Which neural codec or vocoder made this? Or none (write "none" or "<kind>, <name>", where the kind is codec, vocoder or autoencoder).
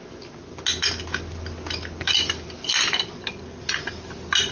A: none